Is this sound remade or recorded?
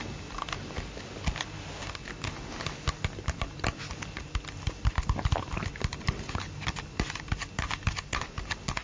recorded